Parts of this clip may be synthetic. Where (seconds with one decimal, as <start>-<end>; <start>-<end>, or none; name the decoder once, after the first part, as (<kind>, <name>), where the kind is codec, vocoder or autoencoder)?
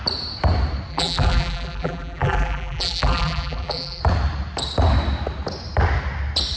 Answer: 0.9-4.0 (vocoder, BigVGAN v2)